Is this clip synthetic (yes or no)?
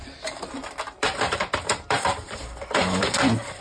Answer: yes